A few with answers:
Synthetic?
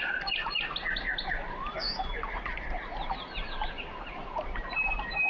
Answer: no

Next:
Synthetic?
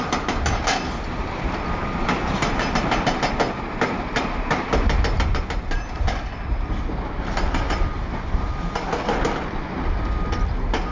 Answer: no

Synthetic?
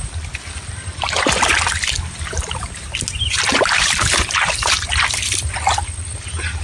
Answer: no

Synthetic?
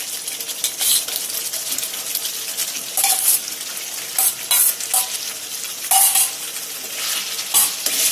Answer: no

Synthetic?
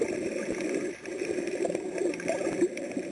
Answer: yes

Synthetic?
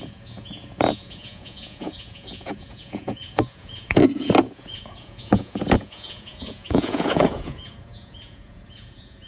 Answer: yes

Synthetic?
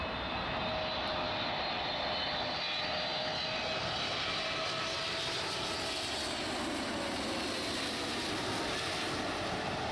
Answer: no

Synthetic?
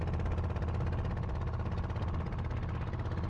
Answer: no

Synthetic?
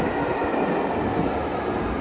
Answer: no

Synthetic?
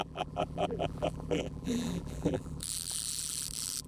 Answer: yes